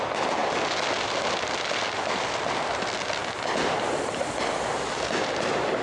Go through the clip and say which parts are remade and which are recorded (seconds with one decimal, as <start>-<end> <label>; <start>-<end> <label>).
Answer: 0.0-0.4 recorded; 0.4-2.0 remade; 2.0-5.8 recorded